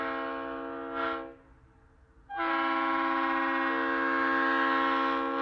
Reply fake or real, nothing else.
real